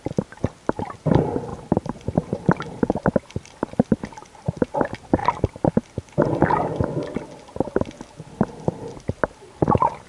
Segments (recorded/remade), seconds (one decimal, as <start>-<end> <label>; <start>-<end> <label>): 0.0-1.5 recorded; 1.5-2.8 remade; 2.8-10.1 recorded